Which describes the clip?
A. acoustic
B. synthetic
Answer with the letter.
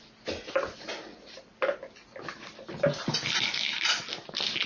A